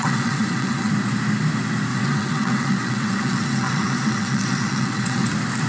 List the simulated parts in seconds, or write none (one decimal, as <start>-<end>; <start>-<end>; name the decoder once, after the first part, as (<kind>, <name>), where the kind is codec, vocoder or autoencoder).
0.0-0.9 (vocoder, WaveNeXt); 1.9-5.3